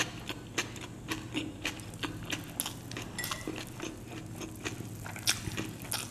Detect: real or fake real